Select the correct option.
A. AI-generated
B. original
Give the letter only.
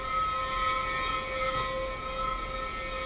B